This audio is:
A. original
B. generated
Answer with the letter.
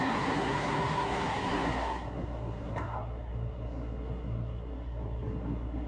B